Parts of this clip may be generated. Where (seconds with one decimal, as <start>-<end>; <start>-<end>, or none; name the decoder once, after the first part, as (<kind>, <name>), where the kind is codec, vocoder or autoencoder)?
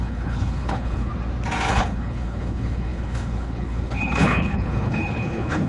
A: 0.0-1.1 (codec, HILCodec); 1.7-5.7